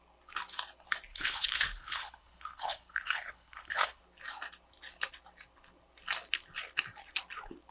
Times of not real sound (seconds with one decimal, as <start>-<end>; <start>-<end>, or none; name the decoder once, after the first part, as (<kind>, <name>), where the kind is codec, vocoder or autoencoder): 1.1-4.0 (codec, HILCodec)